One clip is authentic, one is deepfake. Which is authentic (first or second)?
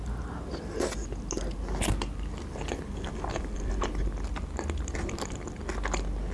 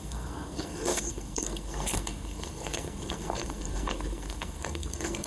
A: first